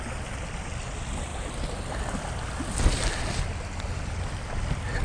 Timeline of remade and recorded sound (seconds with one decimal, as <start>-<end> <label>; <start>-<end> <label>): 0.0-5.0 recorded